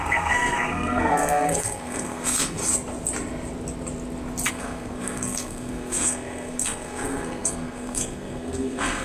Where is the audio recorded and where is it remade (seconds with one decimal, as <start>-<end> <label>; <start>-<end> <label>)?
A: 0.0-2.6 remade; 2.6-4.5 recorded; 4.5-9.0 remade